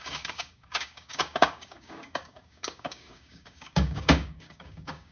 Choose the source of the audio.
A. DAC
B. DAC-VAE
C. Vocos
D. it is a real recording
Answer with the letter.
A